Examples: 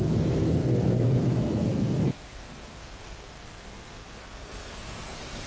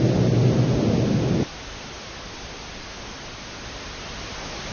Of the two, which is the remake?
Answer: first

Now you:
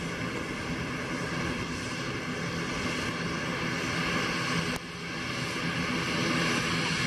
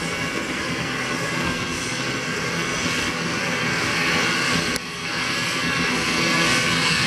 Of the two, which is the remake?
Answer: second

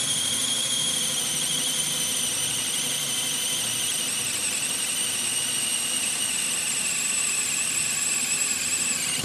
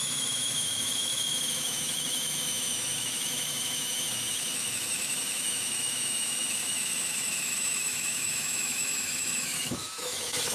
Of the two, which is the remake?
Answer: second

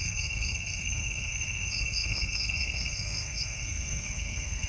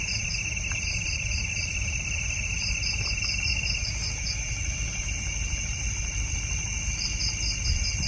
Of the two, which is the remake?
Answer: first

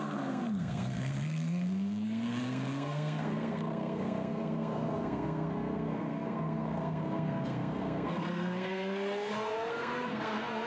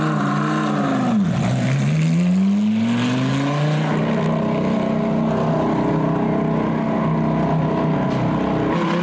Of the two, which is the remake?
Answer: first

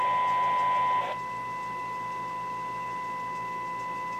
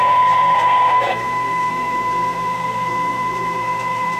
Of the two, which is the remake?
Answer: second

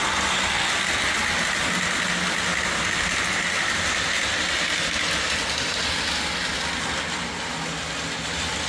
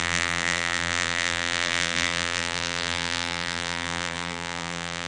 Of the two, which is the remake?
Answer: second